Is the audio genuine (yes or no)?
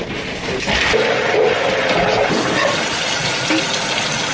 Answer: yes